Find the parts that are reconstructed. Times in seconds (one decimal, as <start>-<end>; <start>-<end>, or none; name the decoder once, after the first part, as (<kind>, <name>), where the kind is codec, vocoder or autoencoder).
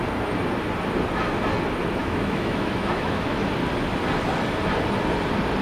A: 2.0-3.5 (autoencoder, DAC-VAE)